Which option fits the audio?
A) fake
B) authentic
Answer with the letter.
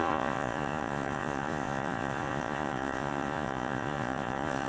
A